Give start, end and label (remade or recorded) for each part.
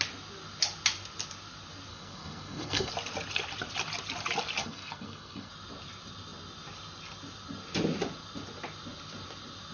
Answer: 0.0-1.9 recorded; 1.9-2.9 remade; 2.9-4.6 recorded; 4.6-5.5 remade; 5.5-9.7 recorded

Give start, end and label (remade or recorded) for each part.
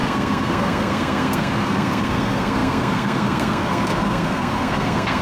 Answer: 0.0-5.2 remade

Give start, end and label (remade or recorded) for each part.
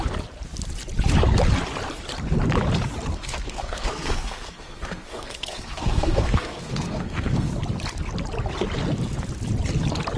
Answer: 0.0-3.1 recorded; 3.1-7.5 remade; 7.5-10.2 recorded